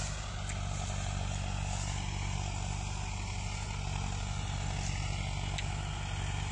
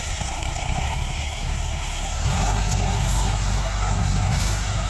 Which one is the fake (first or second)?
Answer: second